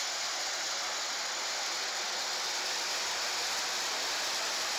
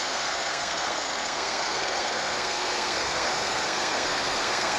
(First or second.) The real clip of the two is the first